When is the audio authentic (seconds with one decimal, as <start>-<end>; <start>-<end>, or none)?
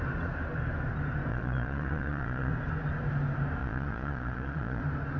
0.0-1.3; 2.5-3.6; 4.8-5.2